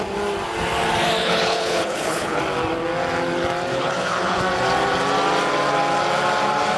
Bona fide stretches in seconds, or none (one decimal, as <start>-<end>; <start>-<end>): 0.0-1.2; 2.4-3.7; 4.4-6.8